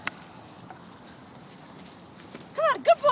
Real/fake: real